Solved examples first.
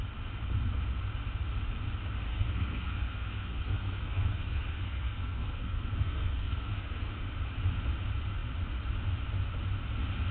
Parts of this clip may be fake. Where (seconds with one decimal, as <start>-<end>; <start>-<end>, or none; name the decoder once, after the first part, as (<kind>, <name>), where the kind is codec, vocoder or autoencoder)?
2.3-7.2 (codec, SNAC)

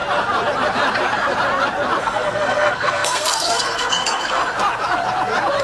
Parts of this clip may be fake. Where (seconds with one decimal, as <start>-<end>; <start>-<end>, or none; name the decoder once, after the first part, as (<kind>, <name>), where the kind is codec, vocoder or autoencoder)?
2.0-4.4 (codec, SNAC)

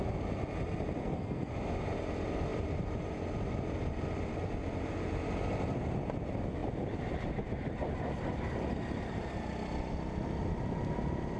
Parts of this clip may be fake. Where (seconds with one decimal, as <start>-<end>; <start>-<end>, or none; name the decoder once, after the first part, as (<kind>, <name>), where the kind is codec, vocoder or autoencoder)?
1.0-1.5 (codec, SNAC)

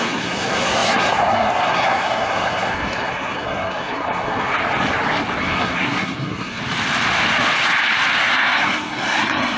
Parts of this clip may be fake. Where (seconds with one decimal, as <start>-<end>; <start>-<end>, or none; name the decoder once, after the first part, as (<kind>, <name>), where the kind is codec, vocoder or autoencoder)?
0.0-4.5 (codec, SNAC); 5.4-6.6; 8.2-9.6